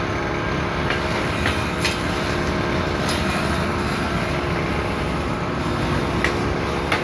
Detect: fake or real real